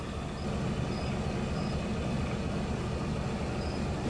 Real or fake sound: real